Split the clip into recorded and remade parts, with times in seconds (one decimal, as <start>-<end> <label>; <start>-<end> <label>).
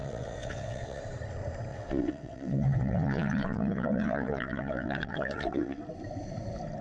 0.0-1.0 remade; 1.0-1.7 recorded; 1.7-5.8 remade; 5.8-6.8 recorded